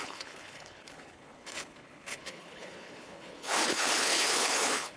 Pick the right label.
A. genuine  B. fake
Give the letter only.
B